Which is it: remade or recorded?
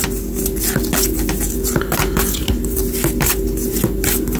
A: recorded